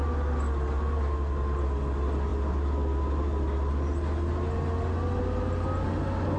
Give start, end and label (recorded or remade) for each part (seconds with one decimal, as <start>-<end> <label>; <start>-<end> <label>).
0.0-6.4 recorded